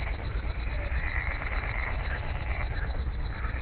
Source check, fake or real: fake